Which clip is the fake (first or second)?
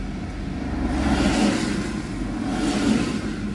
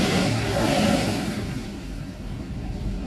second